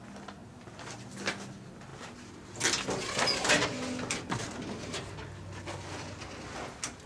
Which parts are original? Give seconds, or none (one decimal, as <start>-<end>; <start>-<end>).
0.0-7.1